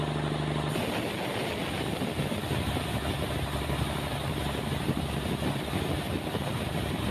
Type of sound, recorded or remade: recorded